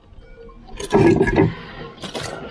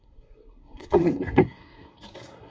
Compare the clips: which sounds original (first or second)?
first